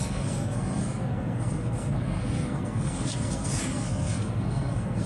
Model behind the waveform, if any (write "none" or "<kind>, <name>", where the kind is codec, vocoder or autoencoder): codec, SNAC